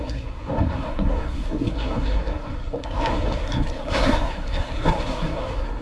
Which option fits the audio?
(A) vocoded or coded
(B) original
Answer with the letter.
A